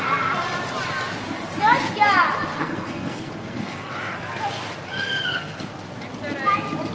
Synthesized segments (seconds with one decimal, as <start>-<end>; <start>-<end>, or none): 2.5-3.9; 4.9-5.7